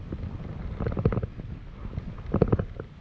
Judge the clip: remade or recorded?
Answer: recorded